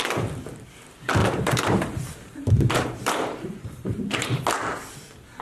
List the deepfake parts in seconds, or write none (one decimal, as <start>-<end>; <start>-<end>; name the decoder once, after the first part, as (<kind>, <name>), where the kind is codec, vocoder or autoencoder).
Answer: 1.2-4.4 (vocoder, BigVGAN v2)